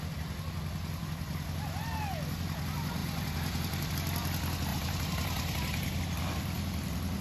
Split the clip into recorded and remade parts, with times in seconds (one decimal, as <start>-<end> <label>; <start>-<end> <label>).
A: 0.0-3.0 recorded; 3.0-3.9 remade; 3.9-4.7 recorded; 4.7-6.0 remade; 6.0-7.2 recorded